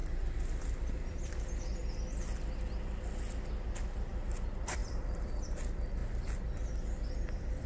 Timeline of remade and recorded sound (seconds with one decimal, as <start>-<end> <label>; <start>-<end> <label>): 0.0-1.8 remade; 1.8-4.1 recorded; 4.1-6.0 remade; 6.0-6.7 recorded; 6.7-7.7 remade